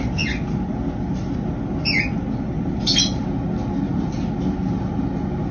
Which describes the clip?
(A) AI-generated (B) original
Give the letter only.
B